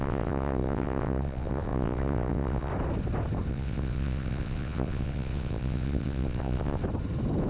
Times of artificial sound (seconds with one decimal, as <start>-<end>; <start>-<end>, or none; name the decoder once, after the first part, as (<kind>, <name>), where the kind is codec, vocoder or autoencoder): 0.0-2.7 (vocoder, WaveNeXt); 3.5-6.8